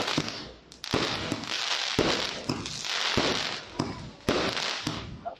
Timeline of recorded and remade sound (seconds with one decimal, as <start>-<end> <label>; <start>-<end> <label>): 0.0-0.6 remade; 0.6-1.1 recorded; 1.1-1.6 remade; 1.6-4.8 recorded; 4.8-5.4 remade